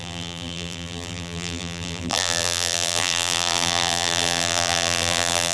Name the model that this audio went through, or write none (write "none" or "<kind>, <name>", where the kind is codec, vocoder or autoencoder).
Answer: vocoder, BigVGAN v2